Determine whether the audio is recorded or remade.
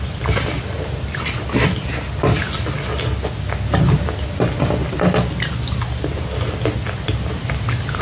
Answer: recorded